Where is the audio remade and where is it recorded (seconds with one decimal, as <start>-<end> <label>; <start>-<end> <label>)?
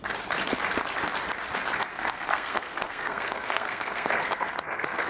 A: 0.0-1.9 recorded; 1.9-5.1 remade